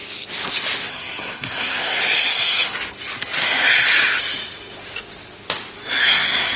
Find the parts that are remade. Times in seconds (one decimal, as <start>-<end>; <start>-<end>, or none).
0.9-2.0; 6.0-6.6